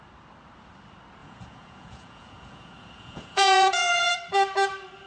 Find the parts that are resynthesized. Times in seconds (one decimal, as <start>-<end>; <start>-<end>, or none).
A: 1.2-4.1